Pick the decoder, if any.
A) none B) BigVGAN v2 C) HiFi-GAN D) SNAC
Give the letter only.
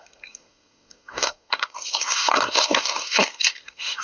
D